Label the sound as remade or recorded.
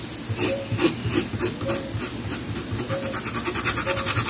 recorded